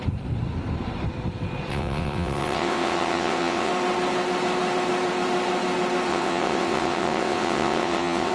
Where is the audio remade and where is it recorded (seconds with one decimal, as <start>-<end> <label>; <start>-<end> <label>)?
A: 0.0-1.7 recorded; 1.7-3.7 remade; 3.7-6.1 recorded; 6.1-8.3 remade